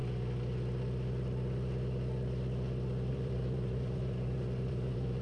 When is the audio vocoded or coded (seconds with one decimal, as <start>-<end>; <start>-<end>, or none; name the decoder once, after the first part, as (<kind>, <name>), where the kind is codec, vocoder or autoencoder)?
3.1-5.2 (vocoder, BigVGAN v2)